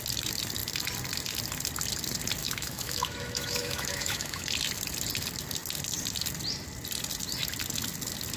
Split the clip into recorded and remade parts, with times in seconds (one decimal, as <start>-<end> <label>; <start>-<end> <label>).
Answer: 0.0-2.4 recorded; 2.4-4.5 remade; 4.5-8.4 recorded